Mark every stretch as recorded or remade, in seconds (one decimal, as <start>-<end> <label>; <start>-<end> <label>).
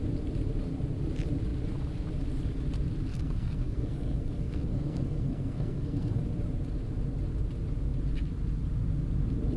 0.0-3.1 recorded; 3.1-6.2 remade; 6.2-9.6 recorded